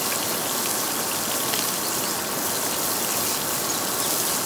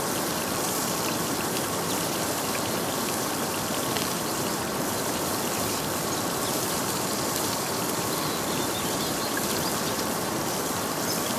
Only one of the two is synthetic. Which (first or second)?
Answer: second